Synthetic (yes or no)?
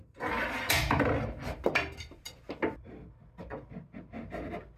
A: no